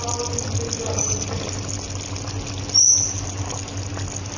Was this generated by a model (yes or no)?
no